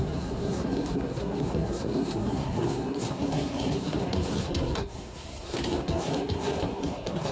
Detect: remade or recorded remade